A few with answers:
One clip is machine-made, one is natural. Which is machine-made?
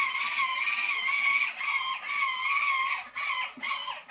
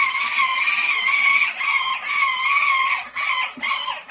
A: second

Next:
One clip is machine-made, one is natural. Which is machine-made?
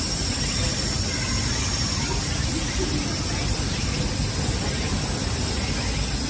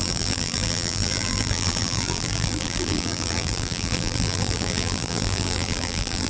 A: second